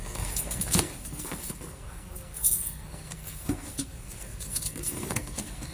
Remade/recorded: remade